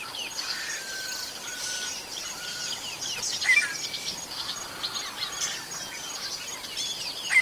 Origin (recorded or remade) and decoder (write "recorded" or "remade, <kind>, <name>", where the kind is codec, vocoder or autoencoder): recorded